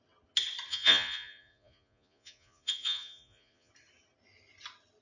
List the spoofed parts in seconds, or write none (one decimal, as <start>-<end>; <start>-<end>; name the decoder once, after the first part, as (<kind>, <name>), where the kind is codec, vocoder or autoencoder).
0.7-3.7 (vocoder, Vocos)